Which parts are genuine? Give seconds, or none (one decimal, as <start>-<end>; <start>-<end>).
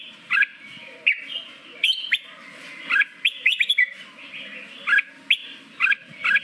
0.0-0.5; 4.3-5.4